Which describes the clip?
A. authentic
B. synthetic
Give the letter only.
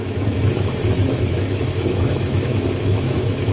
B